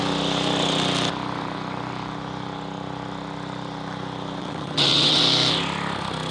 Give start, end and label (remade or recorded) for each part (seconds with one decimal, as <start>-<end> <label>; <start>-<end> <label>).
0.0-4.4 recorded; 4.4-5.2 remade; 5.2-6.3 recorded